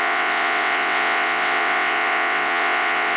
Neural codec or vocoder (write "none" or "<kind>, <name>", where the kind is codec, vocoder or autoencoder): vocoder, WaveNeXt